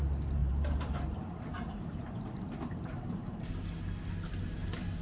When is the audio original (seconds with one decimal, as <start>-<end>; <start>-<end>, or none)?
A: 0.0-0.4; 3.4-5.0